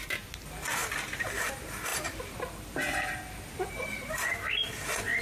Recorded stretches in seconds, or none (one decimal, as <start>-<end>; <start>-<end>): 0.0-5.2

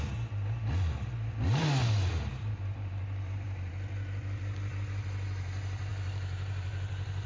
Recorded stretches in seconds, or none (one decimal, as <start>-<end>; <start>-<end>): 0.0-2.3; 3.7-5.9